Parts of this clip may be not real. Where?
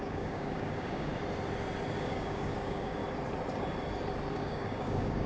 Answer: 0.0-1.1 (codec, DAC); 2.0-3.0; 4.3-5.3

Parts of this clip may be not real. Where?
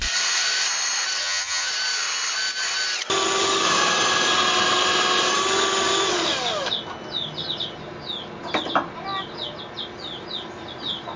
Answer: 1.2-1.7 (vocoder, HiFi-GAN)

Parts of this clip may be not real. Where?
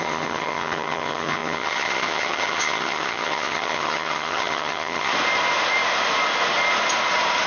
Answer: 0.0-5.1 (vocoder, HiFi-GAN)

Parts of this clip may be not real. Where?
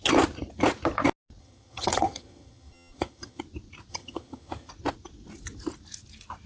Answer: 1.4-3.4 (vocoder, HiFi-GAN); 3.9-4.7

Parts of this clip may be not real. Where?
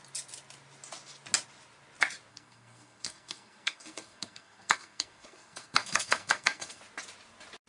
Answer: 2.3-6.8 (codec, SNAC)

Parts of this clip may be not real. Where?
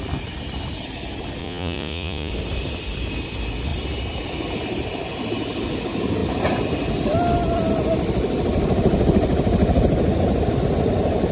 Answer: 1.4-2.3 (vocoder, Vocos)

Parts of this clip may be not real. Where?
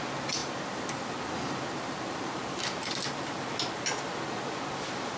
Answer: none